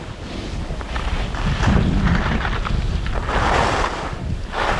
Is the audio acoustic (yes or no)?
yes